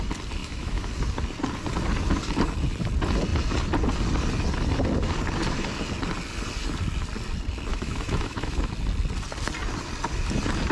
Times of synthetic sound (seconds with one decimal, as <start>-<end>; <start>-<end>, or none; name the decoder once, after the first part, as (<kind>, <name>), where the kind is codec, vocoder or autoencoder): 0.4-0.9 (autoencoder, DAC-VAE); 7.7-8.7